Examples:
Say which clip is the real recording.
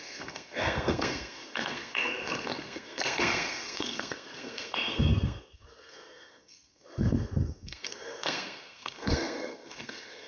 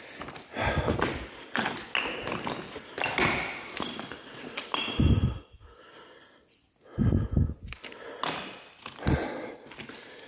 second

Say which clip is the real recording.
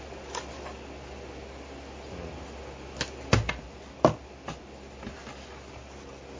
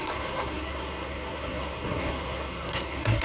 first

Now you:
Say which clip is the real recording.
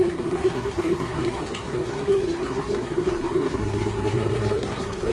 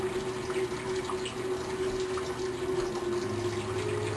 second